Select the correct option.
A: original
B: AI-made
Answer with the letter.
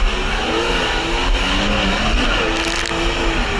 A